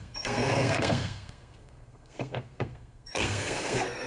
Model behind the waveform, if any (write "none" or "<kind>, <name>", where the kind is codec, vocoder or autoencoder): codec, SNAC